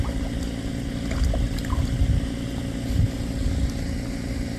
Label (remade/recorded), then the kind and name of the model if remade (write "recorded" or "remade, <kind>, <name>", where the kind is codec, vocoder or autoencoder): recorded